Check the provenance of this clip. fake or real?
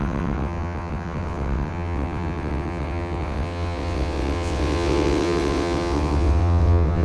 fake